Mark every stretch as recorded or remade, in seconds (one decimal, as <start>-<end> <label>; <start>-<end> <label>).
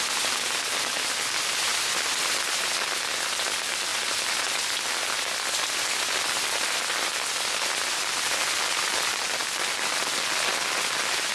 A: 0.0-11.3 recorded